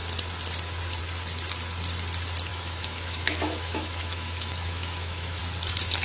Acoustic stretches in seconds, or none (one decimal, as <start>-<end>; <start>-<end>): 0.0-2.5; 5.4-6.0